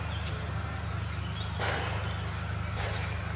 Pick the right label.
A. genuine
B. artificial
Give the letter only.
A